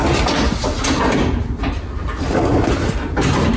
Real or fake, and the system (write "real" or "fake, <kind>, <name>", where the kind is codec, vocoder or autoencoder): real